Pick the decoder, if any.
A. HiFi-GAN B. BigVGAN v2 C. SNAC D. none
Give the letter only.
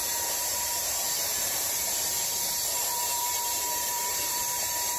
B